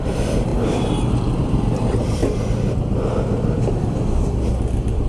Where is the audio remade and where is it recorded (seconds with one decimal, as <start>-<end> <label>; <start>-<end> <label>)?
0.0-0.5 remade; 0.5-1.1 recorded; 1.1-2.2 remade; 2.2-4.1 recorded; 4.1-5.1 remade